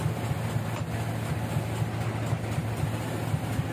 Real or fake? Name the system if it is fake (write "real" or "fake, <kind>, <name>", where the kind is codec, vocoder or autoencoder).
real